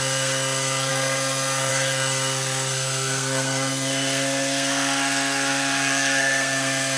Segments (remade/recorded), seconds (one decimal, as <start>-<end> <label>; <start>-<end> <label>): 0.0-7.0 remade

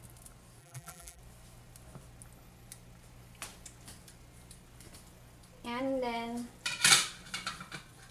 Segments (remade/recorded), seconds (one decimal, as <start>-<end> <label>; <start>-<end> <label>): 0.0-0.6 recorded; 0.6-1.2 remade; 1.2-8.1 recorded

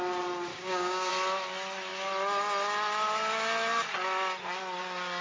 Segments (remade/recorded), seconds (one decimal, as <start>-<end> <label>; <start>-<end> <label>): 0.0-0.5 recorded; 0.5-1.1 remade; 1.1-5.2 recorded

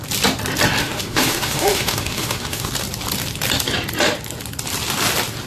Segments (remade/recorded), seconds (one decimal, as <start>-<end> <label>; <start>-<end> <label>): 0.0-0.8 recorded; 0.8-2.7 remade; 2.7-5.5 recorded

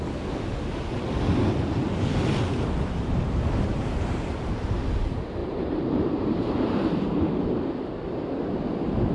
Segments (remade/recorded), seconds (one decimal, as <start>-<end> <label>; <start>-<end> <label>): 0.0-2.5 recorded; 2.5-4.8 remade; 4.8-5.4 recorded; 5.4-7.2 remade; 7.2-9.1 recorded

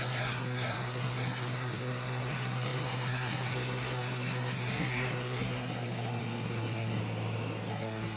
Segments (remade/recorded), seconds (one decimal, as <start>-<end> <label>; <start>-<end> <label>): 0.0-7.0 remade; 7.0-7.7 recorded; 7.7-8.2 remade

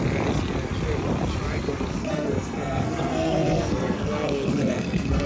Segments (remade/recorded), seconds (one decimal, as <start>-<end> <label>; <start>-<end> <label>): 0.0-2.0 recorded; 2.0-5.3 remade

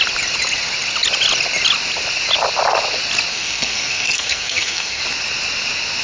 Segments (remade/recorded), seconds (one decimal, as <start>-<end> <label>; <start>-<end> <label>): 0.0-3.3 recorded; 3.3-5.0 remade; 5.0-6.0 recorded